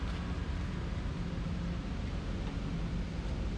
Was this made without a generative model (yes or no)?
yes